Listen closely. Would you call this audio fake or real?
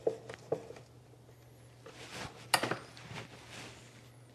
real